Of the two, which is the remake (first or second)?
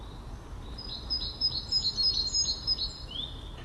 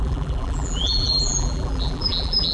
second